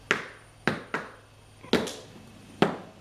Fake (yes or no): no